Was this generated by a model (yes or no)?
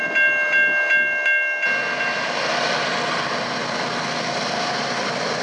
no